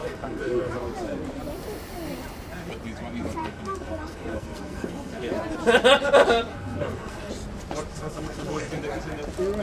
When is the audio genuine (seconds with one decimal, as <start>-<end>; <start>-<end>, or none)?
0.7-3.4; 5.3-6.5; 7.3-7.9; 8.7-9.6